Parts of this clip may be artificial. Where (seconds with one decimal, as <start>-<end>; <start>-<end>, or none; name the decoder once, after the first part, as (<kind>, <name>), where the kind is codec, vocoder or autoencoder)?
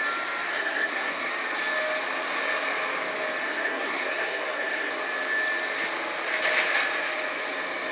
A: 0.5-1.3 (codec, SNAC); 3.4-4.9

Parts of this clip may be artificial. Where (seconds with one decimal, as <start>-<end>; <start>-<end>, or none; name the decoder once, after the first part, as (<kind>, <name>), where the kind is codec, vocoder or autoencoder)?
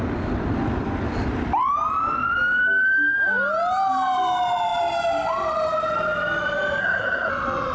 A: 6.8-7.3 (codec, SNAC)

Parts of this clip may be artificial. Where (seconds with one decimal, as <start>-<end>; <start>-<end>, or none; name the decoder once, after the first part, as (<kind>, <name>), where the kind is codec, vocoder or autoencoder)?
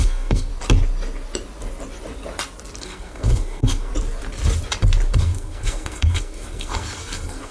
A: 0.0-0.5 (codec, SNAC); 2.8-3.9; 5.2-7.5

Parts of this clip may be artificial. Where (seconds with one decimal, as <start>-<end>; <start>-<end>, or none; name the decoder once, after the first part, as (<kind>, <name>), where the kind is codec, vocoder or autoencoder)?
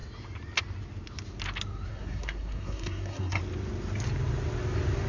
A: 1.9-3.4 (codec, SNAC)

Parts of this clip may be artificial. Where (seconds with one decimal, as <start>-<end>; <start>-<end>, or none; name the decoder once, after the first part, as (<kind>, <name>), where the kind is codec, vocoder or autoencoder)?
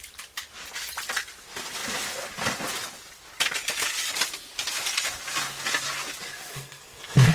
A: 6.5-7.3 (codec, SNAC)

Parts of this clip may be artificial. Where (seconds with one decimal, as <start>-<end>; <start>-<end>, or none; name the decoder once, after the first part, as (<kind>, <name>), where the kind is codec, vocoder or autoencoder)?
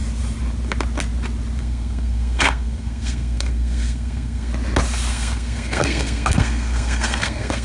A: 1.6-4.5 (codec, SNAC); 5.1-7.6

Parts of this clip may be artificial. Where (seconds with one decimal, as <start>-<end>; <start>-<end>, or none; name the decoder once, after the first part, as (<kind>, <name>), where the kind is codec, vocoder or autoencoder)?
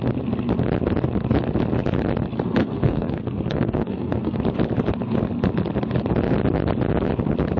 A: 2.6-4.4 (codec, SNAC)